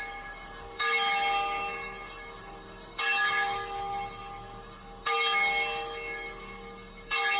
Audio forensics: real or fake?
fake